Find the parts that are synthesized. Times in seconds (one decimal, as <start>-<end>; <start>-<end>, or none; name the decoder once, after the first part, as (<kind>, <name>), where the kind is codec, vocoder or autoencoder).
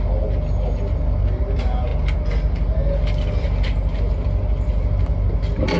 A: none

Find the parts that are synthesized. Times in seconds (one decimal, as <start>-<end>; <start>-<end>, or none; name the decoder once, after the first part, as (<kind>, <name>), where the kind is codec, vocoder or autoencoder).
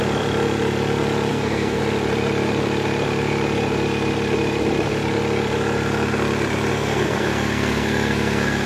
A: 1.3-1.8 (codec, SNAC); 6.7-8.7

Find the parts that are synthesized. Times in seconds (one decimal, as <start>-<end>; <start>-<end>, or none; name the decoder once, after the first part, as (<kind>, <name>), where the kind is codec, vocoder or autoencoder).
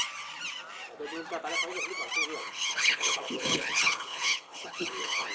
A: 2.4-5.3 (codec, HILCodec)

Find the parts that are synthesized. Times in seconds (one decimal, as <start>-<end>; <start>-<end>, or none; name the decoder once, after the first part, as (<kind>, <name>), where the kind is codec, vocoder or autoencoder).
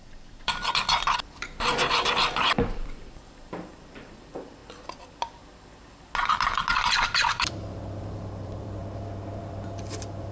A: 0.0-4.6 (vocoder, BigVGAN v2); 6.9-8.8; 9.4-10.3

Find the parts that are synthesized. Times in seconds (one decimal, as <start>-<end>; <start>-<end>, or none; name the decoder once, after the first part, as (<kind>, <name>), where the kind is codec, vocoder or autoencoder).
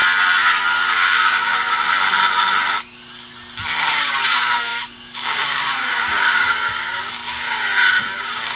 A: 0.7-1.5 (codec, DAC); 3.8-7.2; 8.0-8.6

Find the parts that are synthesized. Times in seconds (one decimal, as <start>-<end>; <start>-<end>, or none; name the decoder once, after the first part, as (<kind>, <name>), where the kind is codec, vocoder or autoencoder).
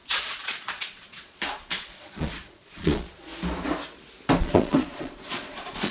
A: 0.0-3.3 (vocoder, Vocos); 4.4-5.9